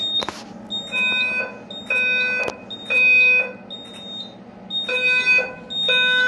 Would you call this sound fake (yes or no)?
no